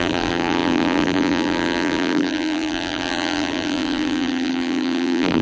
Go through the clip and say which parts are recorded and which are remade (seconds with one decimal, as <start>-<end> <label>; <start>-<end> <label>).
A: 0.0-5.4 remade